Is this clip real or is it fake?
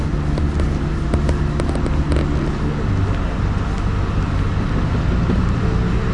real